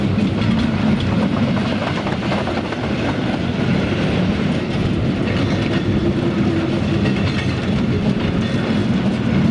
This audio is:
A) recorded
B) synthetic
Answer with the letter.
A